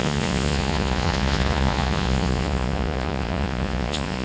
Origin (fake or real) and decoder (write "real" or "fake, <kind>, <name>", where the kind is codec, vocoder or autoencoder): fake, vocoder, Vocos